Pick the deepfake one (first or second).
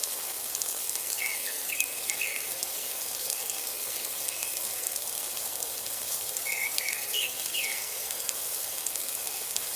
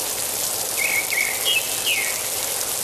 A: first